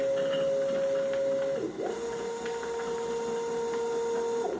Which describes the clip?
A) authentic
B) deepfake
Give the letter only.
A